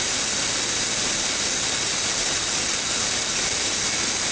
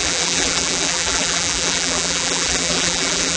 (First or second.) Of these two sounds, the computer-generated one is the second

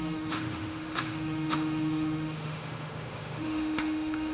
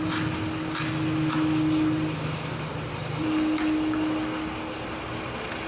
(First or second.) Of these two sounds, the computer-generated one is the first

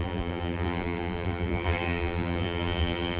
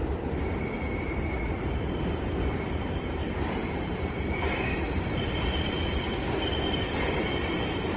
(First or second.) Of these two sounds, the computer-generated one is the first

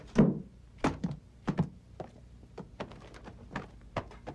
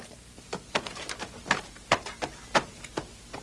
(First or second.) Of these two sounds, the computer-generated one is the second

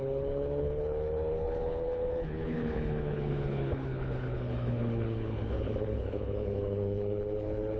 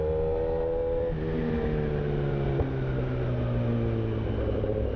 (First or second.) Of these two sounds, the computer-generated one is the first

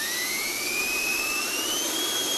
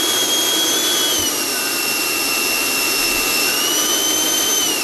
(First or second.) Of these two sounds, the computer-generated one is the first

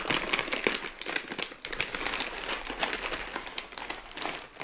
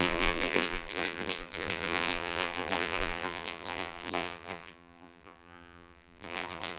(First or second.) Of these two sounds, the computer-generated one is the second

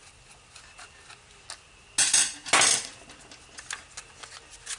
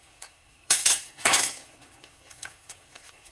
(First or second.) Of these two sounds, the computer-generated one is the second